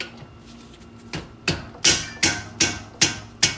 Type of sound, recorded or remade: recorded